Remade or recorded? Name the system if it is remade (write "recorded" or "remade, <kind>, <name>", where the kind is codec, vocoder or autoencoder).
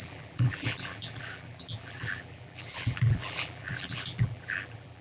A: remade, vocoder, BigVGAN v2